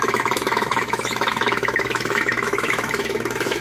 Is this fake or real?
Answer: fake